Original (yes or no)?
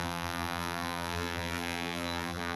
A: no